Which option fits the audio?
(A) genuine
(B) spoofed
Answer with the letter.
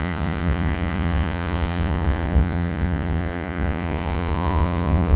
B